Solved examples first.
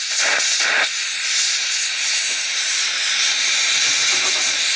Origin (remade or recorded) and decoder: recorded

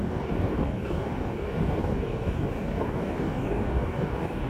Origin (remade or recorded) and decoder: remade, codec, DAC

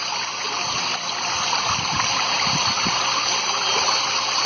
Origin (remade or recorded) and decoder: recorded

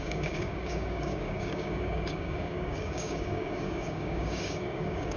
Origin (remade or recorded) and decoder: remade, codec, DAC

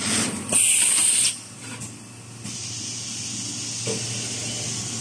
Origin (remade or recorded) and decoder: recorded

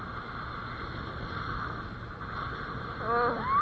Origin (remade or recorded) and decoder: recorded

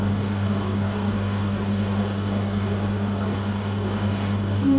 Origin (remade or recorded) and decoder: remade, codec, DAC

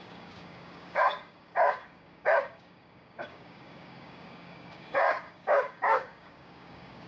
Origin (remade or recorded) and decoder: remade, codec, DAC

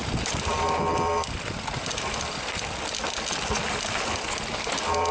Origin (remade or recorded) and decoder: recorded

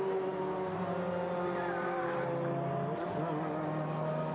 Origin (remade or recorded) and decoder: recorded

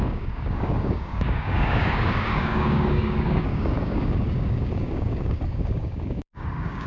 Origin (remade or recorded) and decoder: remade, codec, DAC